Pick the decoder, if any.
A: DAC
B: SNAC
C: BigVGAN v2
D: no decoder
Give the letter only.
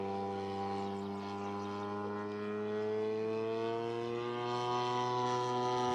D